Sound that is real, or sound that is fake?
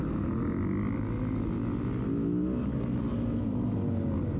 real